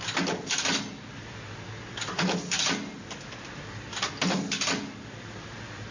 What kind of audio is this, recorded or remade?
recorded